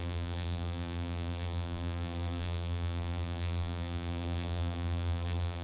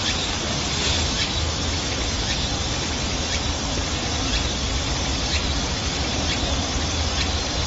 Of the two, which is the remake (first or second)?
first